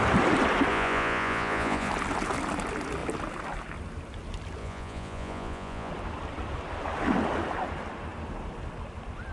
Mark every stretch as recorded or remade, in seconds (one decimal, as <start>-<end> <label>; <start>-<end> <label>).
0.0-0.7 recorded; 0.7-1.9 remade; 1.9-4.6 recorded; 4.6-5.9 remade; 5.9-9.3 recorded